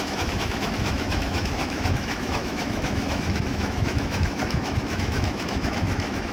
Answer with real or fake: fake